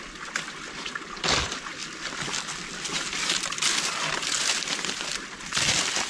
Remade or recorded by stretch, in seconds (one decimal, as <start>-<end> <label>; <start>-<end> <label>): 0.0-6.1 recorded